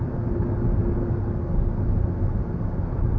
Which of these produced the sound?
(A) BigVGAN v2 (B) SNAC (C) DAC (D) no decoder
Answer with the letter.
D